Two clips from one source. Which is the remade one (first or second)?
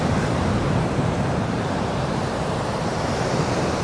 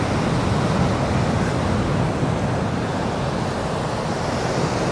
first